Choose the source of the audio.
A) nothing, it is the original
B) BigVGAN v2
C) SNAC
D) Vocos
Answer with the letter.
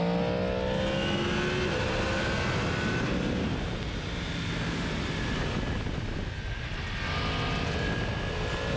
A